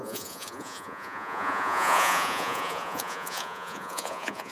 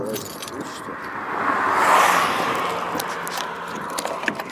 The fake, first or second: first